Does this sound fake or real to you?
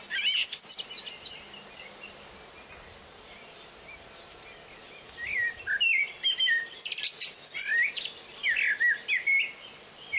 real